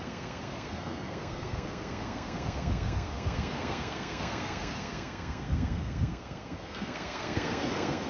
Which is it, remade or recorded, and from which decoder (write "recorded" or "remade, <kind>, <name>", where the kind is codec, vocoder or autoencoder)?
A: remade, codec, SNAC